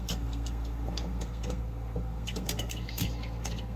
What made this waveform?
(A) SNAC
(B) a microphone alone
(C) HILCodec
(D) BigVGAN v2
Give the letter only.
A